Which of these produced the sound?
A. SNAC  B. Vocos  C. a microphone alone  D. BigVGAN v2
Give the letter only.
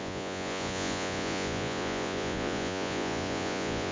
B